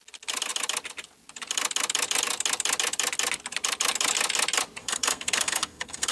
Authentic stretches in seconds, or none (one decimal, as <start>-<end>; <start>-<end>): 0.0-4.8